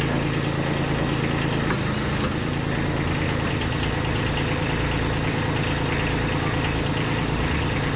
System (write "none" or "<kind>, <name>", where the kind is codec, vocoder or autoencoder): none